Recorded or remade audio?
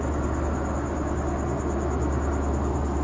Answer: recorded